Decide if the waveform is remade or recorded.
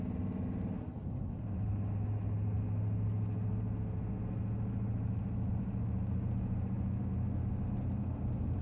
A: recorded